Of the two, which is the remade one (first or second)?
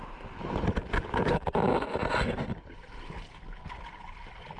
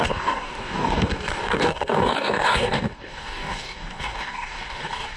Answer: second